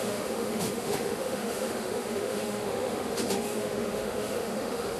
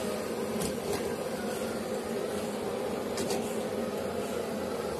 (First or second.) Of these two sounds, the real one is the second